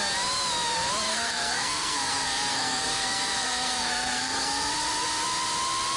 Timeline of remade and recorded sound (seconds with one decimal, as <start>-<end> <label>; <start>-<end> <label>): 0.0-1.1 recorded; 1.1-4.7 remade; 4.7-6.0 recorded

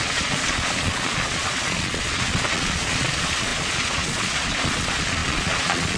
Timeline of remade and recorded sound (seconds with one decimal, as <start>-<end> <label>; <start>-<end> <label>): 0.0-6.0 remade

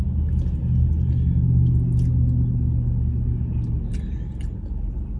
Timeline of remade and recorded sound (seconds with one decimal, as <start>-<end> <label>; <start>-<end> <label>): 0.0-5.2 recorded

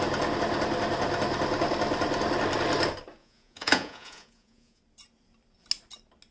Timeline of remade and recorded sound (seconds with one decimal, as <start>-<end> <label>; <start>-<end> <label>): 0.0-3.2 recorded; 3.2-4.8 remade; 4.8-6.3 recorded

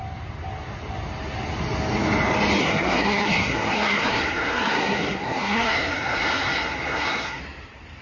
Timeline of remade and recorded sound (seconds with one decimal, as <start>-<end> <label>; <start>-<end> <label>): 0.0-2.6 recorded; 2.6-7.4 remade; 7.4-8.0 recorded

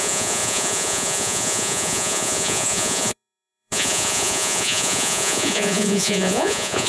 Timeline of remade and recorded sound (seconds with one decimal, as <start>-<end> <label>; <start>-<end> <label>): 0.0-6.9 remade